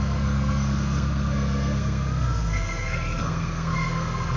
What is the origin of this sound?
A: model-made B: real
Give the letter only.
A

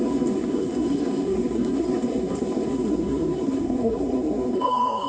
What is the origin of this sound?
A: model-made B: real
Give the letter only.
A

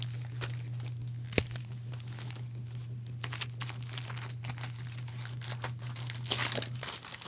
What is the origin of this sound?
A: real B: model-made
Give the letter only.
A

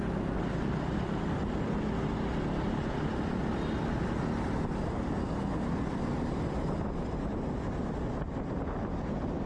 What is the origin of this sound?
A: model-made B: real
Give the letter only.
B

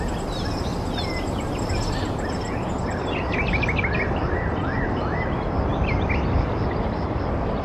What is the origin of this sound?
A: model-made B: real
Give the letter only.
B